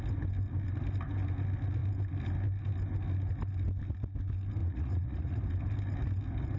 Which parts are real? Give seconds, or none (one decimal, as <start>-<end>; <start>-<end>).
0.0-4.6; 5.4-6.6